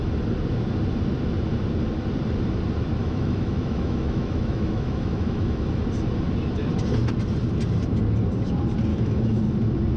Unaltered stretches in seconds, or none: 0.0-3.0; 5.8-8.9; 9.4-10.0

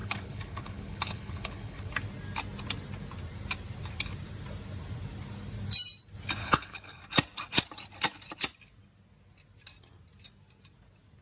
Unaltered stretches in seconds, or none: 1.9-6.4; 7.0-11.2

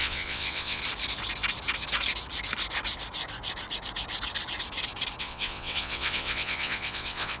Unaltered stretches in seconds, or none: 0.8-5.2

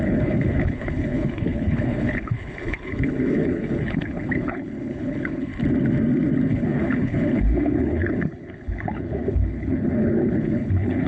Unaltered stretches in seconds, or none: 5.5-6.5

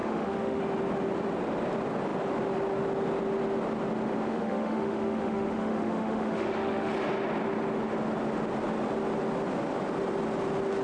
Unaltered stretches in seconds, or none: 0.6-4.3; 6.9-10.8